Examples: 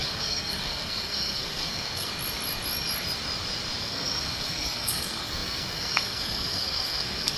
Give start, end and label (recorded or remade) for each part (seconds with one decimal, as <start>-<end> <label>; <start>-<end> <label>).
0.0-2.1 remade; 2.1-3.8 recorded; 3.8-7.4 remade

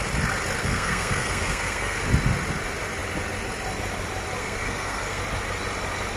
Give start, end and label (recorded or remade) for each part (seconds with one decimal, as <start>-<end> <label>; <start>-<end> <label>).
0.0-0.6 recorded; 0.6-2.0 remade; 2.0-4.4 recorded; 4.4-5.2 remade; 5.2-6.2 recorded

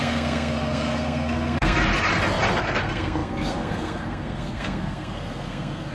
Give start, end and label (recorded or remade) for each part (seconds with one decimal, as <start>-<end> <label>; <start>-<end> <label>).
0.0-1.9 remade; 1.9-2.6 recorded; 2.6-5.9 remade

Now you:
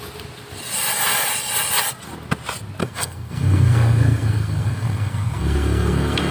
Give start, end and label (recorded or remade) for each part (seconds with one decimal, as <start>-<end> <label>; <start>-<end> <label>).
0.0-2.8 recorded; 2.8-6.3 remade

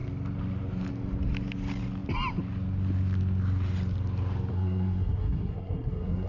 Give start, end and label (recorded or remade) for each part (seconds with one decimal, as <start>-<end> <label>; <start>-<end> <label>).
0.0-4.5 recorded; 4.5-6.3 remade